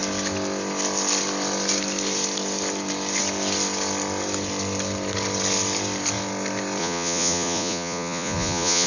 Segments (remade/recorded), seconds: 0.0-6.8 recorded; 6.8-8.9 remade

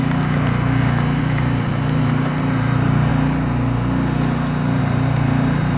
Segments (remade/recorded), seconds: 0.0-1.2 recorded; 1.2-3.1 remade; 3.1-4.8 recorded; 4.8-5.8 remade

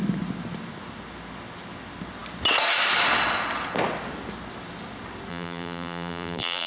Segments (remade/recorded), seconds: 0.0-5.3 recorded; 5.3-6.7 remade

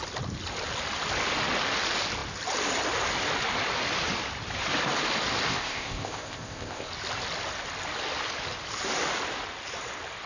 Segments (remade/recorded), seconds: 0.0-5.5 recorded; 5.5-6.9 remade; 6.9-10.3 recorded

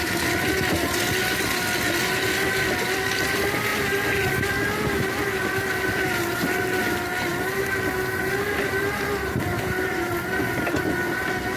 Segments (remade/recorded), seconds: 0.0-11.6 recorded

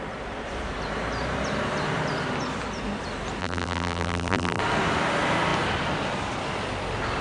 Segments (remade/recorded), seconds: 0.0-3.4 recorded; 3.4-4.6 remade; 4.6-7.2 recorded

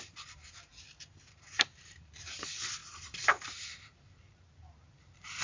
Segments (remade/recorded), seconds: 0.0-0.7 remade; 0.7-1.3 recorded; 1.3-5.4 remade

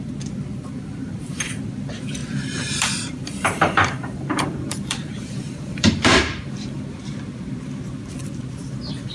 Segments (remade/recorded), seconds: 0.0-1.0 recorded; 1.0-1.5 remade; 1.5-2.2 recorded; 2.2-6.8 remade; 6.8-9.1 recorded